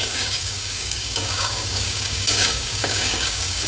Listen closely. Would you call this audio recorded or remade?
remade